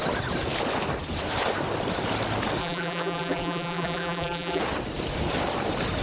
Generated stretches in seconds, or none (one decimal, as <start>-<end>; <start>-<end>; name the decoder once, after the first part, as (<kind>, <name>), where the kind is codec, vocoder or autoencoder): 2.6-4.6 (vocoder, BigVGAN v2)

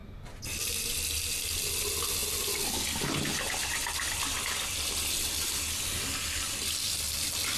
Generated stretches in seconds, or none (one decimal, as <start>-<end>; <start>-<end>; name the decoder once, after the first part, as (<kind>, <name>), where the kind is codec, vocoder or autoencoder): none

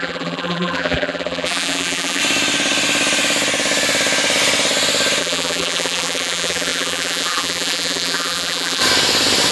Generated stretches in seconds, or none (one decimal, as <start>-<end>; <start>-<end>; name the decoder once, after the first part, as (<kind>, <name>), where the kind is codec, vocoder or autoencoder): 0.0-2.2 (vocoder, BigVGAN v2); 5.2-8.8

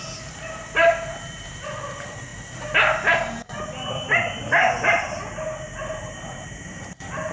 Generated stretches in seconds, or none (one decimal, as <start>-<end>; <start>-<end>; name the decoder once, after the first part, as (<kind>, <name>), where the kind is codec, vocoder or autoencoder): 0.0-2.3 (vocoder, BigVGAN v2); 3.6-4.4; 5.0-7.3